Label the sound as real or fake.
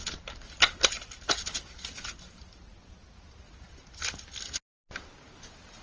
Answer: real